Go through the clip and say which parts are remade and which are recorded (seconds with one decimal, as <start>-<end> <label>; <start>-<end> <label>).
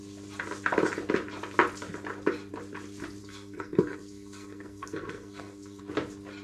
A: 0.0-3.2 recorded; 3.2-5.8 remade; 5.8-6.4 recorded